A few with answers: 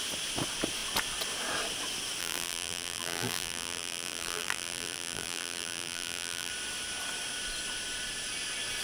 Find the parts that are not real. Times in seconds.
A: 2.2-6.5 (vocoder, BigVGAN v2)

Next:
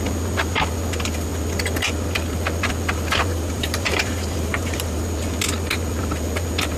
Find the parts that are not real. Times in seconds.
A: 3.3-5.0 (vocoder, BigVGAN v2)

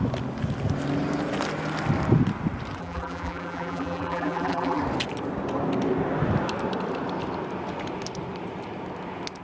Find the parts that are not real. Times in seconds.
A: 2.8-4.8 (vocoder, BigVGAN v2)

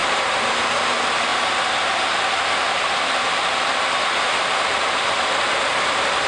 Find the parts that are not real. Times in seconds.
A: 0.0-0.5 (vocoder, BigVGAN v2)

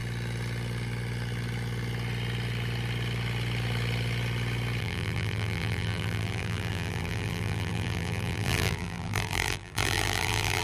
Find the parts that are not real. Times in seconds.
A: 4.8-10.6 (vocoder, BigVGAN v2)

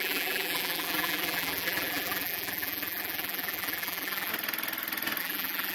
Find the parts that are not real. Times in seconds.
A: 0.0-4.3 (vocoder, BigVGAN v2); 5.2-5.7